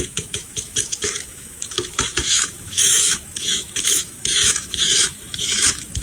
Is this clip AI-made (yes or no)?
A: yes